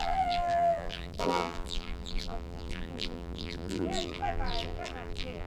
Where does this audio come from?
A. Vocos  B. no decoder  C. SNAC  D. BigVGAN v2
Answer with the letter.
D